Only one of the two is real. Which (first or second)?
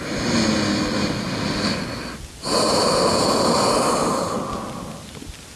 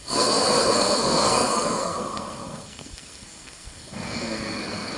first